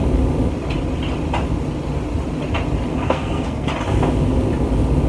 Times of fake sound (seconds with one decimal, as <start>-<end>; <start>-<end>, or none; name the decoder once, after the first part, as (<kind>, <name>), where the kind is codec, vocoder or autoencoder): 2.9-3.7 (codec, SNAC)